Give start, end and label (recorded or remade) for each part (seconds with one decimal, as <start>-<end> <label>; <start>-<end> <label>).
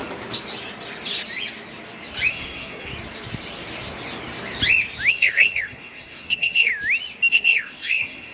0.0-2.3 recorded; 2.3-2.9 remade; 2.9-5.1 recorded; 5.1-6.7 remade; 6.7-7.3 recorded; 7.3-8.3 remade